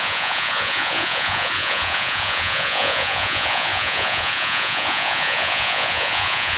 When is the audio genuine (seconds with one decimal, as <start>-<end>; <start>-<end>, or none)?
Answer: none